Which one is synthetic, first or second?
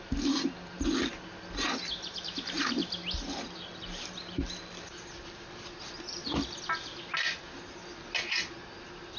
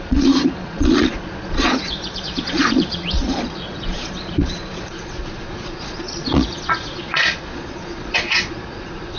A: second